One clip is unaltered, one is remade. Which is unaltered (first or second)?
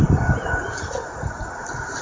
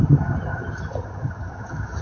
first